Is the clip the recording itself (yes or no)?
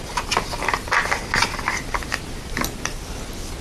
yes